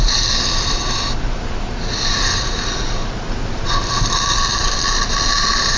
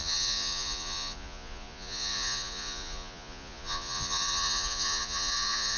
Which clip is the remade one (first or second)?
second